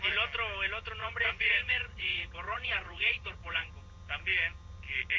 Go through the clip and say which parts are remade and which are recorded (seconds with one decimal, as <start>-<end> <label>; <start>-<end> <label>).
0.0-1.0 recorded; 1.0-3.7 remade; 3.7-5.2 recorded